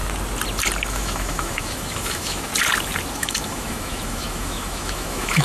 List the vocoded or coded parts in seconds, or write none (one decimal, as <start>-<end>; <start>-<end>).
0.9-2.5; 3.1-5.4